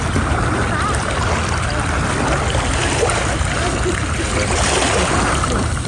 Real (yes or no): yes